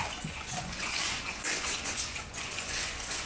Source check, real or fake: fake